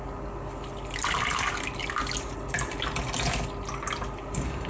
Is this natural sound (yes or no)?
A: yes